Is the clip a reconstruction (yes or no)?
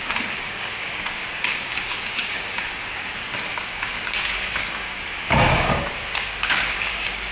yes